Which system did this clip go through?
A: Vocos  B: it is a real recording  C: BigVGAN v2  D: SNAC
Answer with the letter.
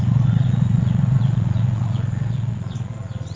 A